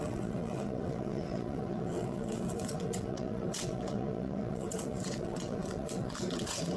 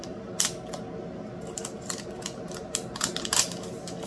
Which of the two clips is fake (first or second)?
first